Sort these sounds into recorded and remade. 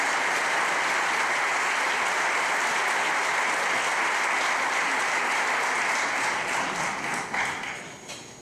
recorded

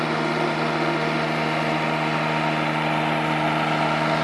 recorded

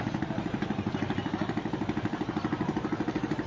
remade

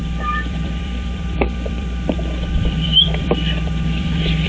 remade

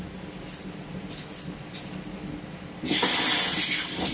recorded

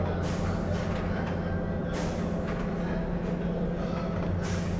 recorded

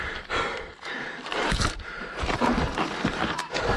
remade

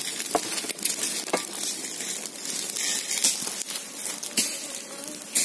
recorded